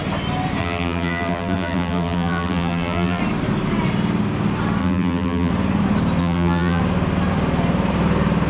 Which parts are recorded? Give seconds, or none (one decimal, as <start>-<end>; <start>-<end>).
0.0-0.6; 3.2-4.8; 5.5-6.2; 6.8-8.5